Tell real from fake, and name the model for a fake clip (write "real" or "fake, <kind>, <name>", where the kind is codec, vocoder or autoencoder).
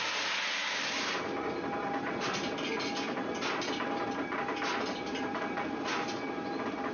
real